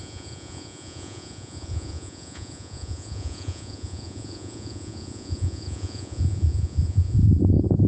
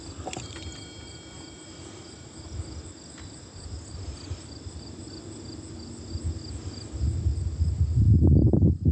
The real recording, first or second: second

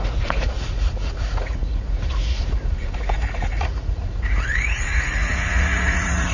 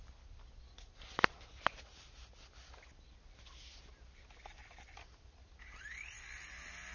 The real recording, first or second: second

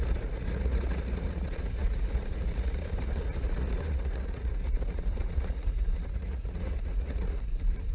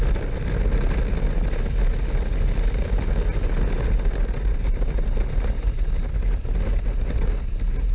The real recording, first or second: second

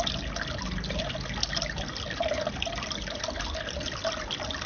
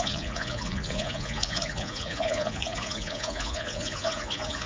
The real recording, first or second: first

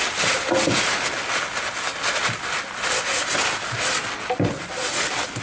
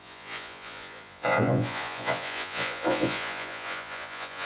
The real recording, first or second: first